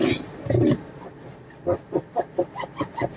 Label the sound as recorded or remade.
recorded